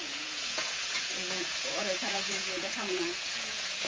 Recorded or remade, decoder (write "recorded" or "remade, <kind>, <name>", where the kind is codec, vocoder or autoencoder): remade, vocoder, Vocos